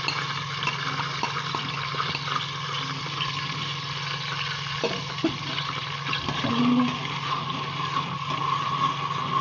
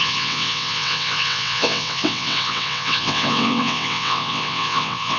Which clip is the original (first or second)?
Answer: first